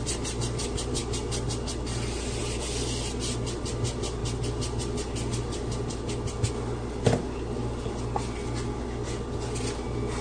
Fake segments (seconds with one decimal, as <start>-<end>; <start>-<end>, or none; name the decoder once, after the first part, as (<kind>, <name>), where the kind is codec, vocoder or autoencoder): none